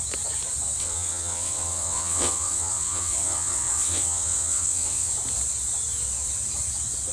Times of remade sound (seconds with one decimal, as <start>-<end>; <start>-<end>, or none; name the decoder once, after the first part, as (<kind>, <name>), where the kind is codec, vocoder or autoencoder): 0.8-5.1 (vocoder, WaveNeXt)

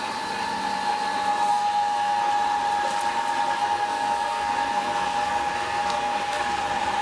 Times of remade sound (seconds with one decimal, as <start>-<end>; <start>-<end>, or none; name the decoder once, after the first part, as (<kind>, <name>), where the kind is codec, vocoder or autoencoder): 1.5-2.3 (codec, SNAC); 3.6-6.6

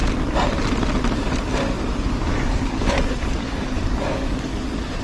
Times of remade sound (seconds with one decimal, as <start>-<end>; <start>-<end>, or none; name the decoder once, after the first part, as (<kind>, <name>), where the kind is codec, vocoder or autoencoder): 2.3-2.9 (codec, DAC); 3.4-4.5

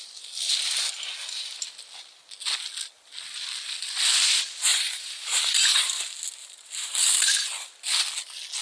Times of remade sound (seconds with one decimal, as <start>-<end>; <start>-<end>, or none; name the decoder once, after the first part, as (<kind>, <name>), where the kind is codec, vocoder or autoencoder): 4.7-6.0 (vocoder, BigVGAN v2); 6.4-7.1

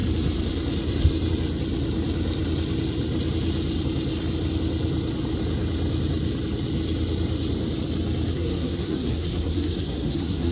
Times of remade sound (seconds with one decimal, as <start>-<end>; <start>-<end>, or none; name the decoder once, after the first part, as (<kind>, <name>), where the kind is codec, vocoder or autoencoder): 8.3-10.5 (codec, SNAC)

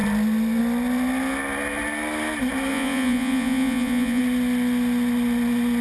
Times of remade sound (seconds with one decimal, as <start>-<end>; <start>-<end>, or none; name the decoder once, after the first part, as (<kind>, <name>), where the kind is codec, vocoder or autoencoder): 2.7-4.2 (vocoder, Vocos)

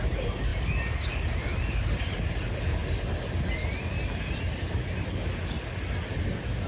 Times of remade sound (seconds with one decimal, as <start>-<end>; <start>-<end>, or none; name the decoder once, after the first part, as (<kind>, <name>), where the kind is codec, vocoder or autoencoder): none

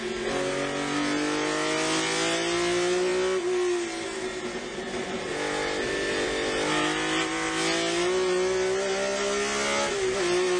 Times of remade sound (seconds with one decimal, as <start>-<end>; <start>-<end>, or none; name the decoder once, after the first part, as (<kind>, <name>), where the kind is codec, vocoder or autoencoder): none